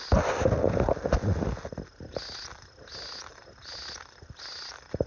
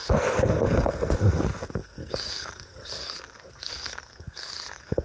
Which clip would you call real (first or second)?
first